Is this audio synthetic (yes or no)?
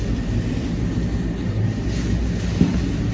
no